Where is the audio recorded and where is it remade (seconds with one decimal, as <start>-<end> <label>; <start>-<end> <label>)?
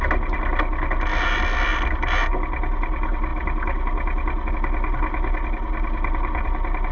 0.0-6.9 recorded